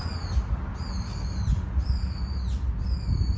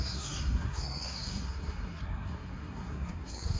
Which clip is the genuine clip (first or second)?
first